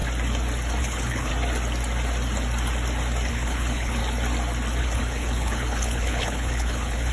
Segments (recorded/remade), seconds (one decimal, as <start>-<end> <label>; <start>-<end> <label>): 0.0-0.8 recorded; 0.8-1.3 remade; 1.3-3.3 recorded; 3.3-4.0 remade; 4.0-4.8 recorded; 4.8-7.1 remade